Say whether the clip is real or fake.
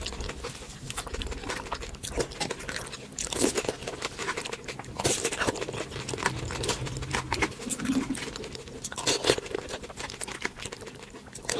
real